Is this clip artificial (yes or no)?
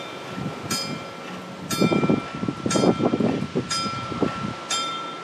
no